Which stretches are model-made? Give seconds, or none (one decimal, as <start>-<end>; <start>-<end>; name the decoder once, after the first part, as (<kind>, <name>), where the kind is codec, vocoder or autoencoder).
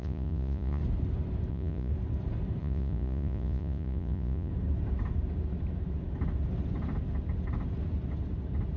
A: 0.0-0.8 (vocoder, Vocos); 1.5-1.9; 2.6-4.5